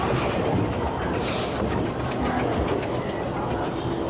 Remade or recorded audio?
recorded